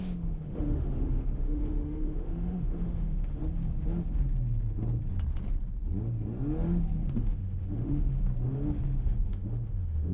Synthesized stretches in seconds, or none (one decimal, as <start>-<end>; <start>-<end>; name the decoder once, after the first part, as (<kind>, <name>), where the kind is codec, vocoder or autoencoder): 0.0-3.4 (autoencoder, DAC-VAE); 7.0-8.3; 9.0-10.1